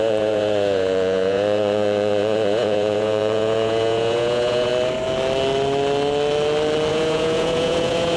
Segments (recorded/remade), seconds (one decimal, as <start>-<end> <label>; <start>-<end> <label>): 0.0-4.7 remade; 4.7-6.9 recorded; 6.9-8.2 remade